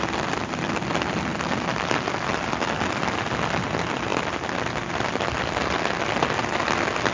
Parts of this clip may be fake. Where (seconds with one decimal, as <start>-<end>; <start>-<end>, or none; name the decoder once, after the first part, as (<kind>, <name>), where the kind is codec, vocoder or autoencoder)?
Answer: none